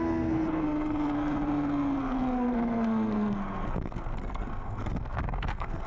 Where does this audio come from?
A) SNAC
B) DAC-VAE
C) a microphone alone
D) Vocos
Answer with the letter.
A